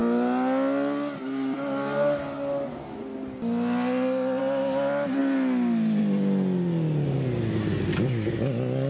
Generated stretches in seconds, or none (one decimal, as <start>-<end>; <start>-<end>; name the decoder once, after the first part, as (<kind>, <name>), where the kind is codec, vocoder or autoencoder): none